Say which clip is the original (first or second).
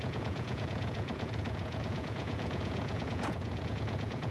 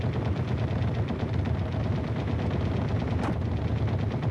second